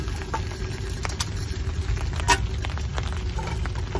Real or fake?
real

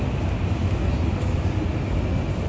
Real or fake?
real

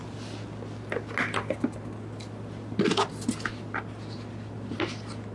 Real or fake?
real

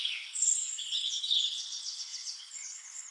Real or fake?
fake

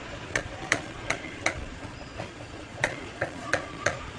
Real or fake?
fake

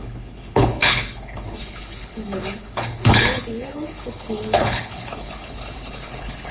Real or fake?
fake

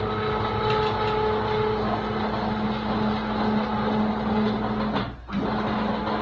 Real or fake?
real